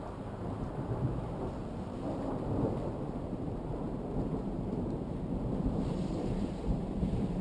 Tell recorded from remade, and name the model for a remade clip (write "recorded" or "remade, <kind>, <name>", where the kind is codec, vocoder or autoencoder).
remade, vocoder, BigVGAN v2